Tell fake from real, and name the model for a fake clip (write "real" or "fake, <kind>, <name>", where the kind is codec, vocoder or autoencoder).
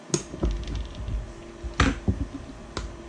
real